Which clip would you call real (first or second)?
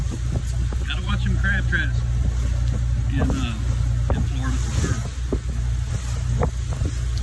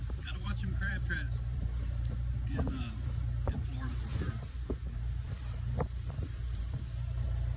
first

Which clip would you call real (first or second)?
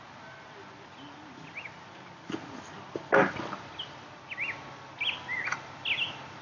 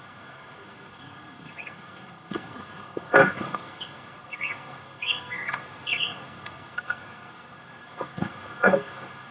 first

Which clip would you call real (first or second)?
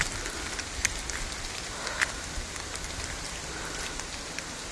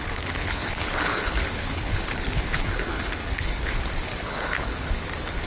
first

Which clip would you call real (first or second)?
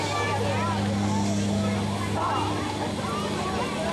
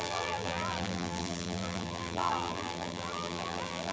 first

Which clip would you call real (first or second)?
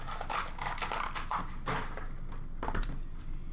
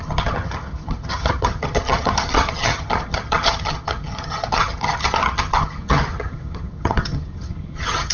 first